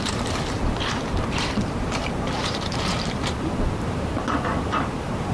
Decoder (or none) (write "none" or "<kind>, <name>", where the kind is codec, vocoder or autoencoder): vocoder, BigVGAN v2